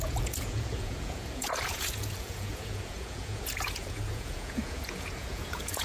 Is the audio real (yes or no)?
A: no